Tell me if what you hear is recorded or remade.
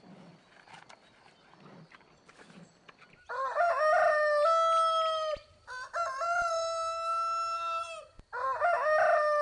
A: recorded